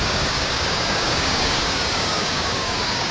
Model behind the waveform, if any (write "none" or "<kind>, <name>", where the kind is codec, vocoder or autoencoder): codec, DAC